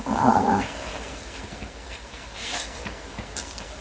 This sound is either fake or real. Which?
fake